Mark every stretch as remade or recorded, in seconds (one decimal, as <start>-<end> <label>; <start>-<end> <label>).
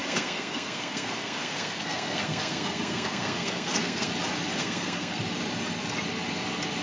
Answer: 0.0-4.1 remade; 4.1-4.6 recorded; 4.6-5.2 remade; 5.2-6.8 recorded